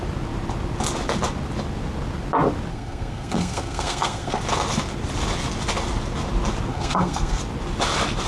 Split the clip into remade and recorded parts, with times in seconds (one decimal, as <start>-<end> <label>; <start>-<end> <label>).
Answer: 0.0-2.7 recorded; 2.7-4.4 remade; 4.4-6.7 recorded; 6.7-7.4 remade; 7.4-8.3 recorded